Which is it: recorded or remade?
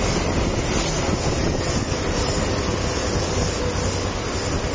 recorded